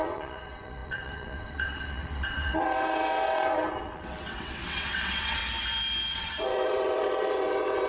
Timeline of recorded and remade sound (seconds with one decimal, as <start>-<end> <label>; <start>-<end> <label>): 0.0-5.4 remade; 5.4-6.1 recorded; 6.1-7.9 remade